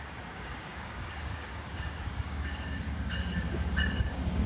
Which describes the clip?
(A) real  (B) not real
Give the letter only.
B